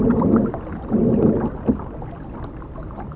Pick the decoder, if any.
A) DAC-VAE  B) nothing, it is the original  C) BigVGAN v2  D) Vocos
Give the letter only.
B